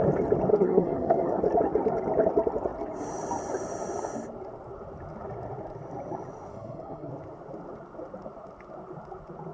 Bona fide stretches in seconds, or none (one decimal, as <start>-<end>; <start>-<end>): 0.0-0.5; 1.4-6.5; 7.1-9.5